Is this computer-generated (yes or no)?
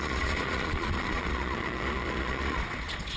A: yes